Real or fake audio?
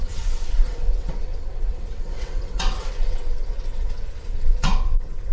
fake